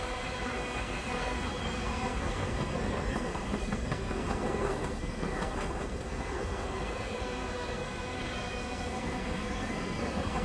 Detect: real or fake fake